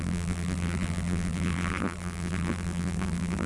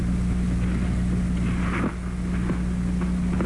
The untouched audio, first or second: second